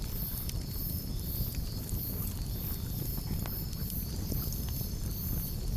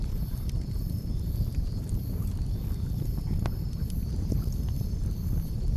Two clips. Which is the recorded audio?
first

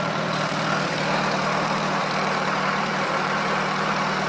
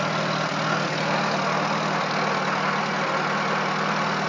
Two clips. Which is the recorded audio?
second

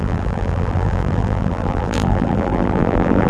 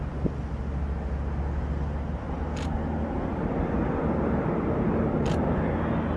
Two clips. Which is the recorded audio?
second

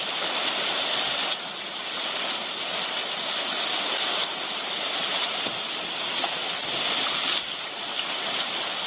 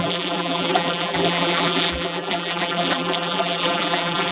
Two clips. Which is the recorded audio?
first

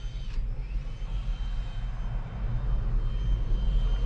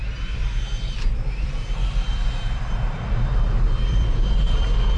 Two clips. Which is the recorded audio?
first